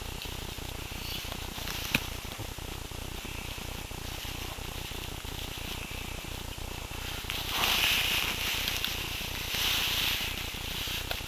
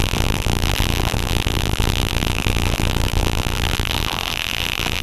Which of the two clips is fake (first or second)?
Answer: second